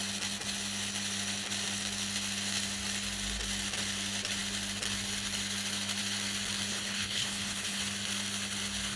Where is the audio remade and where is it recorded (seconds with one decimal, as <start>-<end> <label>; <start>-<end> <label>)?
0.0-6.7 recorded; 6.7-7.8 remade; 7.8-9.0 recorded